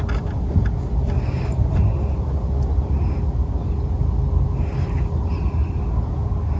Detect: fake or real real